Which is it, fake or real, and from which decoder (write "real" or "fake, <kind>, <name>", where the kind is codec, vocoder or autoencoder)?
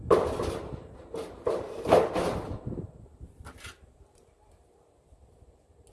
real